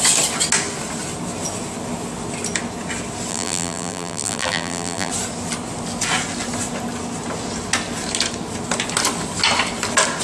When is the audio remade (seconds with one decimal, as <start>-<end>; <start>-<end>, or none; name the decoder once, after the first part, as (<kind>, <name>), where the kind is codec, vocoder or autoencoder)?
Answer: 3.3-5.1 (vocoder, BigVGAN v2)